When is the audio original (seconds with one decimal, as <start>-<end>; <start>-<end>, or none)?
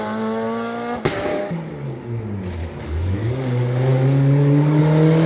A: 0.0-1.3; 2.2-2.6; 4.8-5.3